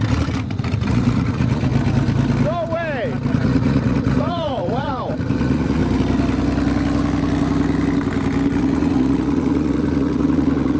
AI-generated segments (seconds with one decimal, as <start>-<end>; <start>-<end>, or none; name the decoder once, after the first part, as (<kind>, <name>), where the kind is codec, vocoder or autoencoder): 0.0-1.7 (vocoder, Vocos); 3.3-5.8; 8.6-10.8